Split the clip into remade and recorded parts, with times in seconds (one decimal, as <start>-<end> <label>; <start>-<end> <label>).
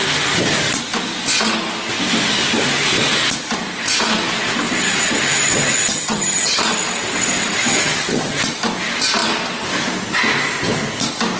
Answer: 0.0-5.9 recorded; 5.9-6.6 remade; 6.6-7.7 recorded; 7.7-8.4 remade; 8.4-11.4 recorded